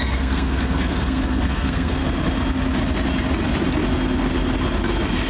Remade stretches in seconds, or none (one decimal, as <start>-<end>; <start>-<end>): 0.0-2.0